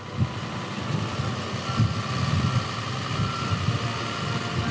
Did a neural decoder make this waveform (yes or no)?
no